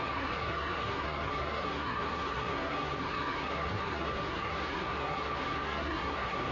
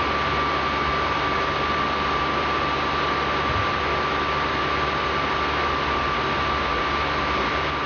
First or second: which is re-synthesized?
first